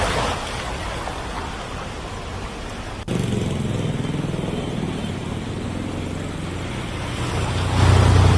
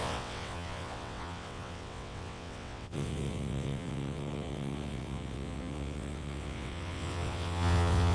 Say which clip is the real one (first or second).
first